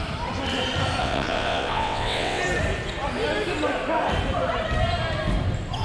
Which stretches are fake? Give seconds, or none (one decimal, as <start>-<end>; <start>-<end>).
1.0-2.4